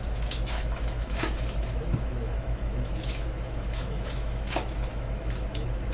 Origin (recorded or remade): remade